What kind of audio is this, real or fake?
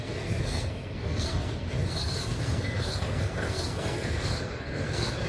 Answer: fake